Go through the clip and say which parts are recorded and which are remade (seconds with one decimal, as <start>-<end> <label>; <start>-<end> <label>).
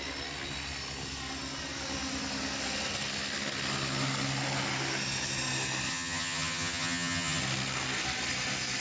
0.0-5.9 recorded; 5.9-7.4 remade; 7.4-8.8 recorded